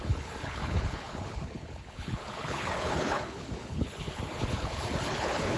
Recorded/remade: remade